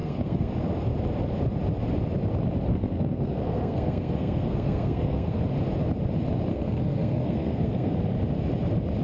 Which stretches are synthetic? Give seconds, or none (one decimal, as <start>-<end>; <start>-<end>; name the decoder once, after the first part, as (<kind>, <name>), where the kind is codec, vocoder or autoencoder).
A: 0.0-0.5 (codec, SNAC); 2.7-5.4; 6.5-7.9